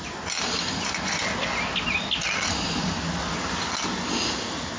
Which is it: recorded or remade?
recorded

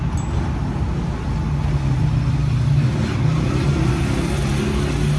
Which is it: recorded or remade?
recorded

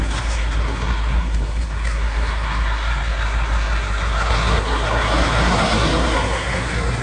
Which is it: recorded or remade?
remade